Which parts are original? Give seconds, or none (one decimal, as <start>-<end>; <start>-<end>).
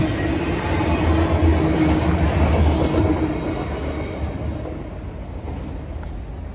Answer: 0.0-6.5